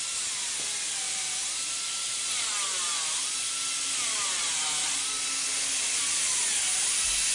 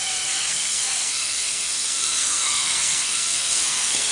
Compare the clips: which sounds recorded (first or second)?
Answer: first